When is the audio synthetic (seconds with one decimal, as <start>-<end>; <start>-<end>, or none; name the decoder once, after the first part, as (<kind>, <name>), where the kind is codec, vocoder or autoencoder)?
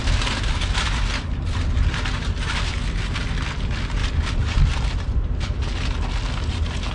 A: 4.0-5.8 (vocoder, BigVGAN v2)